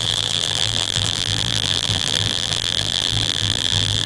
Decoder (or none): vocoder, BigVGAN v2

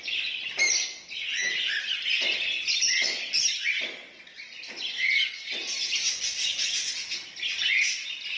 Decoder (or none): none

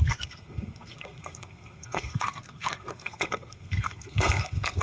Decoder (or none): codec, SNAC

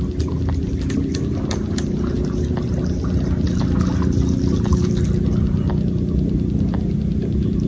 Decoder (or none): none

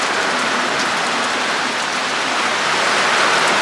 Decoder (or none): none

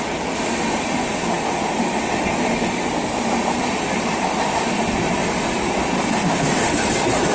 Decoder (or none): none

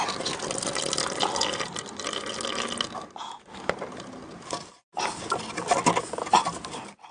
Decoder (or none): none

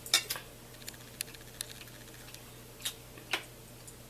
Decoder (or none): none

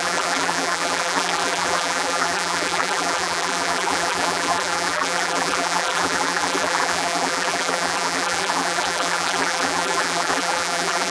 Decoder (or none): vocoder, BigVGAN v2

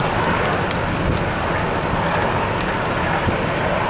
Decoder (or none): none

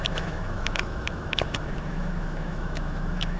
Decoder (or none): autoencoder, DAC-VAE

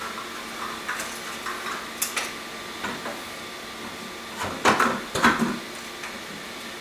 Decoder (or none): none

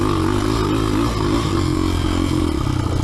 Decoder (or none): none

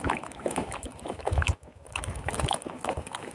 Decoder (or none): autoencoder, DAC-VAE